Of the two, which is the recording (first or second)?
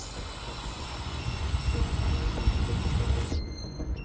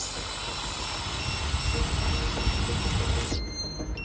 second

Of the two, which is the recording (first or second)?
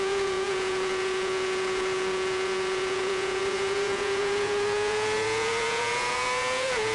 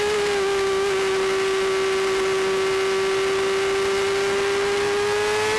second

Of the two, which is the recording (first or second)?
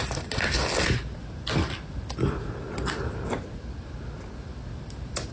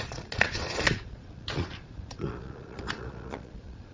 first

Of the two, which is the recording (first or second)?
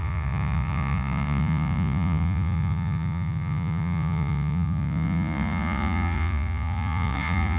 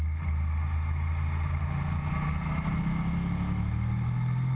second